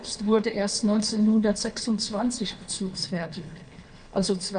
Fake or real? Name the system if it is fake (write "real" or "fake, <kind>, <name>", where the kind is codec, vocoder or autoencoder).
fake, codec, HILCodec